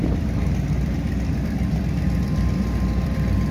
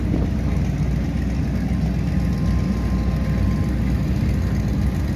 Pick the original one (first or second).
second